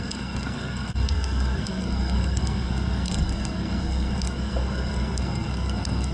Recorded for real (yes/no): no